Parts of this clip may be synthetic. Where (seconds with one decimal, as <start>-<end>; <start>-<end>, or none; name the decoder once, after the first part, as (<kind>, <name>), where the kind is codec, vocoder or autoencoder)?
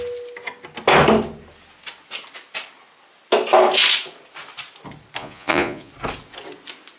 5.2-5.9 (vocoder, Vocos)